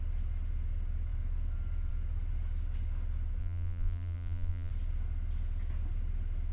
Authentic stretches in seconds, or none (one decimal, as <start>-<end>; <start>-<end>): 0.0-3.4; 4.7-6.5